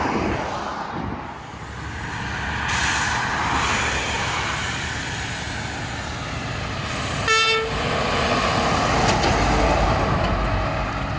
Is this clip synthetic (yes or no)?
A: no